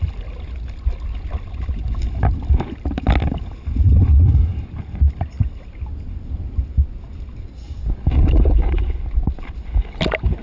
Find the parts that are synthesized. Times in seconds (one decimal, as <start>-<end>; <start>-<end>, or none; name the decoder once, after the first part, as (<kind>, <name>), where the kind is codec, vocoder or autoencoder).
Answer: none